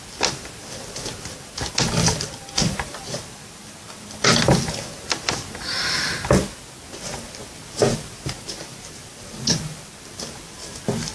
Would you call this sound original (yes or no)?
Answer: yes